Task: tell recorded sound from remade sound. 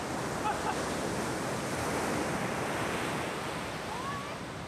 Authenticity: recorded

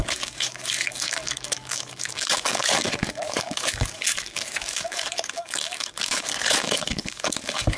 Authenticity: remade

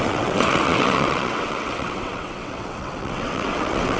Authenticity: remade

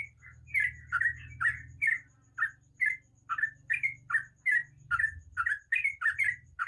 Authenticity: recorded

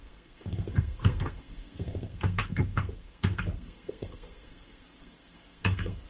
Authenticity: remade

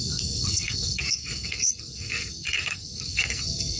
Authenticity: remade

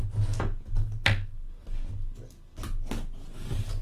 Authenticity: recorded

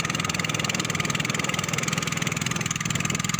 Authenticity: recorded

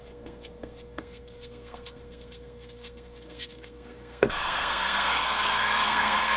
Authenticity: remade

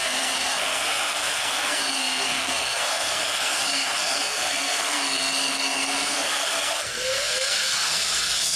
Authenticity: remade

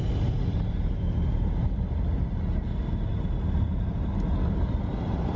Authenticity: recorded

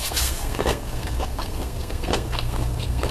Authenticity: remade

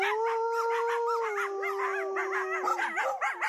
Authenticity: recorded